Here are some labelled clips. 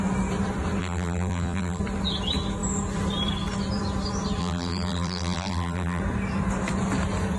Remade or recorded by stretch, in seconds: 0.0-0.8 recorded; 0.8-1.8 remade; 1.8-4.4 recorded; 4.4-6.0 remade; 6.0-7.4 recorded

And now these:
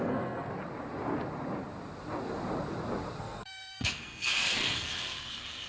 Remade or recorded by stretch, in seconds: 0.0-0.5 remade; 0.5-3.2 recorded; 3.2-5.7 remade

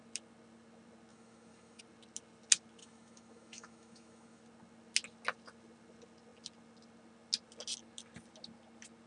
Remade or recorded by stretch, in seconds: 0.0-1.1 recorded; 1.1-1.8 remade; 1.8-2.8 recorded; 2.8-4.4 remade; 4.4-9.1 recorded